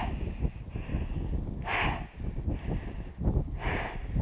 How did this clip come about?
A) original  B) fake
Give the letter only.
A